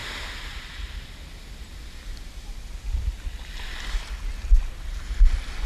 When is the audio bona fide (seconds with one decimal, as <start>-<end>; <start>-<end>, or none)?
0.0-5.7